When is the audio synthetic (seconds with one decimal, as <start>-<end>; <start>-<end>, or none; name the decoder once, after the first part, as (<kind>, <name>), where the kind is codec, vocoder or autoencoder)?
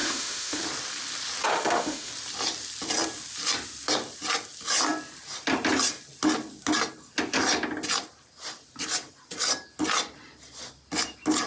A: 0.0-0.6 (autoencoder, DAC-VAE); 1.5-2.1